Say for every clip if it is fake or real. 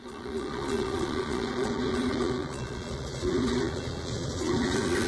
fake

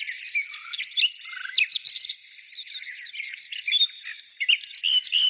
real